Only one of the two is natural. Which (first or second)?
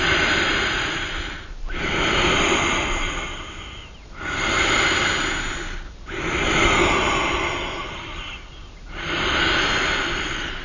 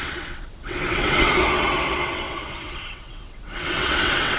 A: first